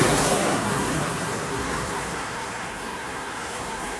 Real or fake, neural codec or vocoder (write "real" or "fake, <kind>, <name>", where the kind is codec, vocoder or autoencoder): fake, codec, SNAC